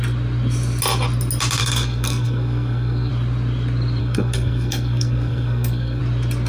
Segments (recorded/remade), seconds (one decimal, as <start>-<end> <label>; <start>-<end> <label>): 0.0-1.6 recorded; 1.6-3.1 remade; 3.1-4.0 recorded; 4.0-6.0 remade; 6.0-6.5 recorded